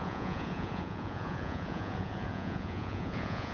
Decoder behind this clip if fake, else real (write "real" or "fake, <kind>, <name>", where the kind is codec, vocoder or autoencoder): fake, vocoder, Vocos